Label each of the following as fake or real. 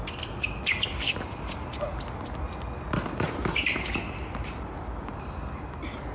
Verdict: real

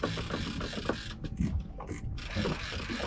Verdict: real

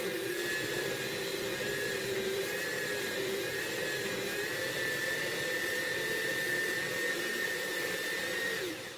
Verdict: fake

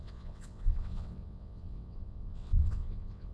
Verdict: fake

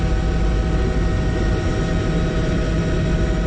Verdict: real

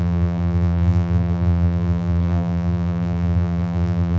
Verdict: fake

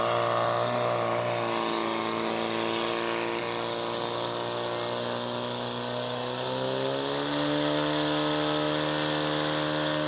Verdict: real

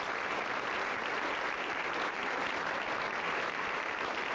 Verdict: fake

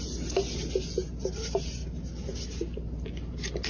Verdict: real